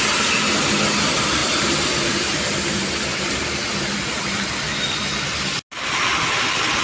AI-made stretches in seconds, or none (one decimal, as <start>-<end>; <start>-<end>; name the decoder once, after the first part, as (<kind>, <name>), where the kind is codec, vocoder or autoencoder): 1.4-4.1 (vocoder, BigVGAN v2)